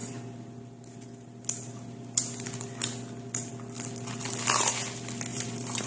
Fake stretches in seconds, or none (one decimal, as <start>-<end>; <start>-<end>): 5.3-5.9